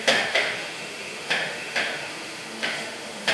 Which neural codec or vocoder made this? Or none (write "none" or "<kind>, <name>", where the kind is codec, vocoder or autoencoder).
autoencoder, DAC-VAE